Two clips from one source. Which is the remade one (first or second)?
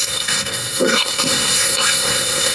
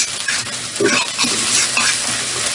first